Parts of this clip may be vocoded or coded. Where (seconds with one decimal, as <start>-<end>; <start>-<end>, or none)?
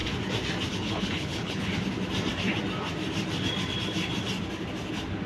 0.7-1.7